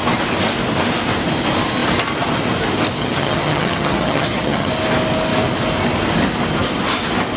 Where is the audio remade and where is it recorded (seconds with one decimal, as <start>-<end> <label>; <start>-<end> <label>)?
0.0-3.0 recorded; 3.0-4.7 remade; 4.7-7.4 recorded